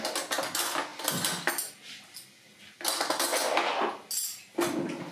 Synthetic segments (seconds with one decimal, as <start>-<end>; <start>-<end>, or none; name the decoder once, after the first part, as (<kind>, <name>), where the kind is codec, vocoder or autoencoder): none